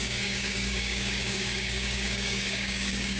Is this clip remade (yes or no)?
yes